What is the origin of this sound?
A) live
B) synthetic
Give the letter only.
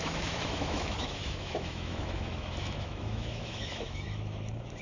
B